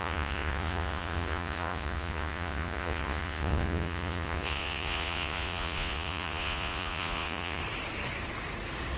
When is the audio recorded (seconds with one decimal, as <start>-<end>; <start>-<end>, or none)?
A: 7.6-9.0